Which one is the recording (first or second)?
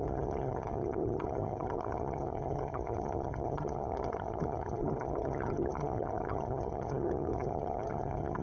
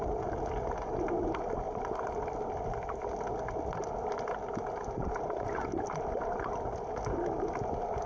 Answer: second